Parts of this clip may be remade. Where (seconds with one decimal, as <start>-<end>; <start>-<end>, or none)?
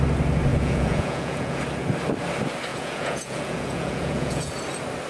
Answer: 0.5-1.6; 2.7-4.5